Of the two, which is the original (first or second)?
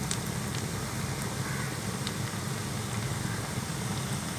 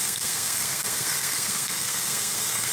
first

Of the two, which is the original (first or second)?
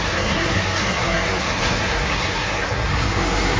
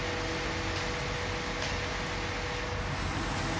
second